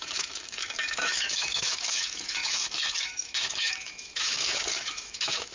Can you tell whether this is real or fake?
fake